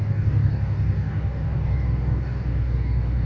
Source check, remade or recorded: remade